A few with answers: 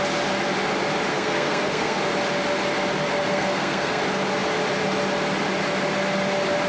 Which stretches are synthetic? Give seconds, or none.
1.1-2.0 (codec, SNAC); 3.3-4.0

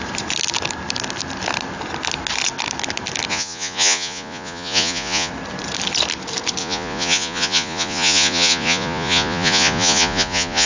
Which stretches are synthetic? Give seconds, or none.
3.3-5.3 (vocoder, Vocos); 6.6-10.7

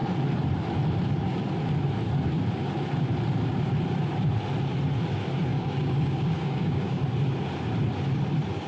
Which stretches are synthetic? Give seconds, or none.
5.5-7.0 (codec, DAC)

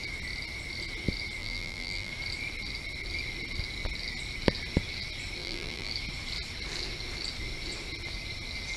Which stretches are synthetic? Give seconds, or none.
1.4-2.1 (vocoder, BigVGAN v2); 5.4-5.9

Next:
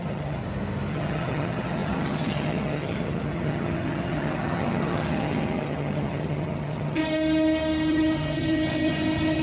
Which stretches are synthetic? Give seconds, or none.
0.0-0.4 (vocoder, HiFi-GAN); 0.9-7.0; 7.9-9.4

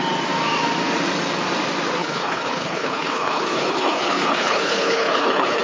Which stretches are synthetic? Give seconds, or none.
2.0-5.6 (codec, HILCodec)

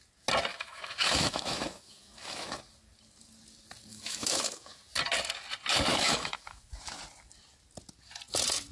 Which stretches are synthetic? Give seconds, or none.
0.5-2.6 (autoencoder, DAC-VAE); 3.9-4.8; 5.9-7.0

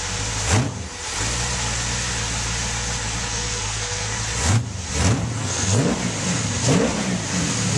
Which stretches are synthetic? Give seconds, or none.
3.3-4.2 (codec, SNAC); 5.4-5.9